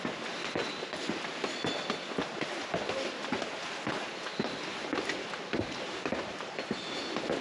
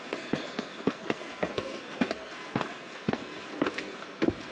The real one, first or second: first